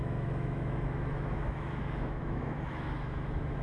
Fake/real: fake